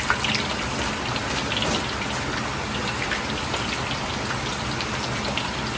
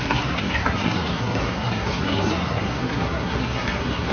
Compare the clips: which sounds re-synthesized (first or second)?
second